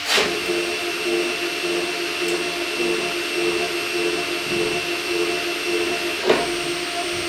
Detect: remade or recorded recorded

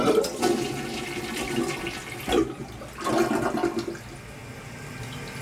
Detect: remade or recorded recorded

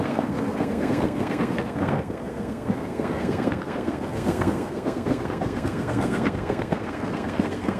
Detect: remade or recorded remade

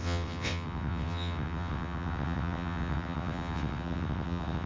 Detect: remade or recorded remade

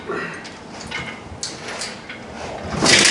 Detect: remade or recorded recorded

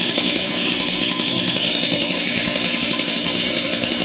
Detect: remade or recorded remade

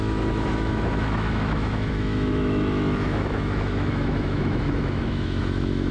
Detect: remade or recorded remade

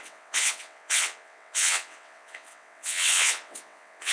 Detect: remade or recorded remade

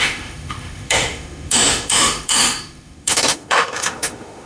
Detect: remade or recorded remade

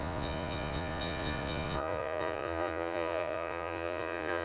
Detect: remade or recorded remade